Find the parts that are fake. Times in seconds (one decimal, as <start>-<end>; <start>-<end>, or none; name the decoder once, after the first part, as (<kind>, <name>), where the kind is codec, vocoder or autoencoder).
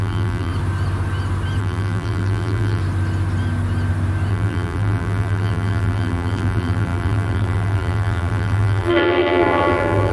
0.0-0.5 (vocoder, BigVGAN v2); 1.6-2.8; 4.3-10.1